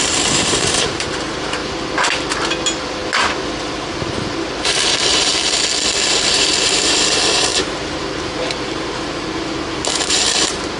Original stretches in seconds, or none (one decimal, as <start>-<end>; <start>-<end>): 1.6-2.6; 3.0-3.6; 5.3-6.1